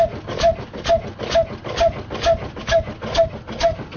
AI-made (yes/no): no